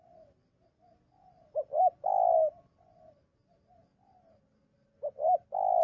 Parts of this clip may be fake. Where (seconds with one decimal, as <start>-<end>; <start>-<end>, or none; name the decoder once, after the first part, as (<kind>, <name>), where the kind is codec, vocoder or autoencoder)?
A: none